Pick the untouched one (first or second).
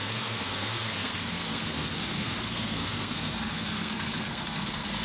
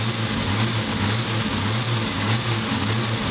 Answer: second